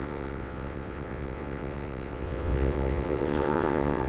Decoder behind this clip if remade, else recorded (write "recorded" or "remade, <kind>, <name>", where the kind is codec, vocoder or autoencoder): remade, vocoder, WaveNeXt